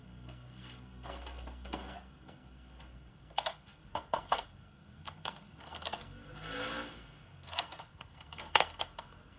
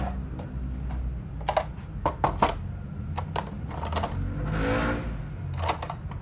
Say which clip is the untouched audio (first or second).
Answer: second